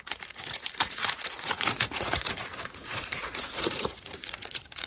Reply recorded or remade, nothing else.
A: remade